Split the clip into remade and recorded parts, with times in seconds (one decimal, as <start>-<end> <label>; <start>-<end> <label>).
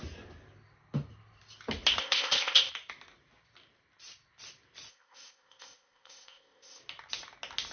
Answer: 0.0-2.0 recorded; 2.0-2.7 remade; 2.7-4.9 recorded; 4.9-6.8 remade; 6.8-7.7 recorded